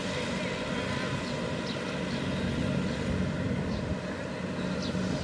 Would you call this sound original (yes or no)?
yes